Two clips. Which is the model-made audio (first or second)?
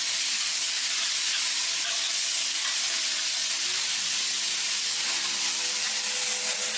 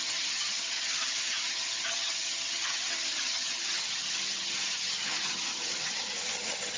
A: second